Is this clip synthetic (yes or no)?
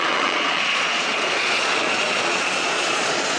yes